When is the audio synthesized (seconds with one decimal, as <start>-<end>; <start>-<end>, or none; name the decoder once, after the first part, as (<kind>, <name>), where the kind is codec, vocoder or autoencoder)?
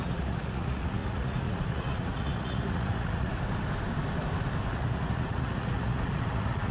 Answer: 0.0-3.3 (vocoder, Vocos); 4.6-6.7